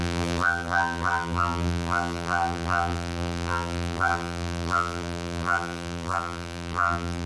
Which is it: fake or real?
fake